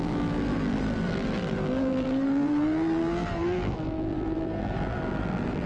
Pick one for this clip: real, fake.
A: fake